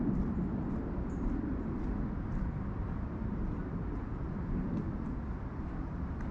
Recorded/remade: recorded